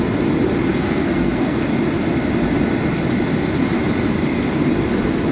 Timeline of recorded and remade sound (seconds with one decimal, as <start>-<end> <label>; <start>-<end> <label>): 0.0-0.7 recorded; 0.7-1.6 remade; 1.6-5.3 recorded